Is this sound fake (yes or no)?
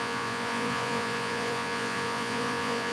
yes